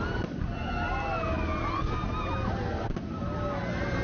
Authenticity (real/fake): real